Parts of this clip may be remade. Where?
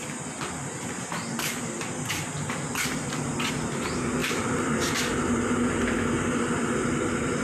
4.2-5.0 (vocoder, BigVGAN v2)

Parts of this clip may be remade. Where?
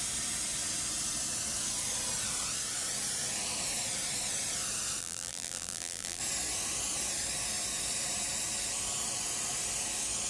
5.0-6.2 (vocoder, BigVGAN v2)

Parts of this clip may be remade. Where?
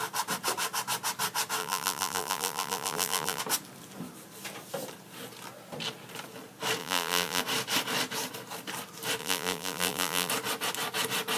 1.6-3.4 (vocoder, BigVGAN v2); 6.8-7.4; 9.2-10.3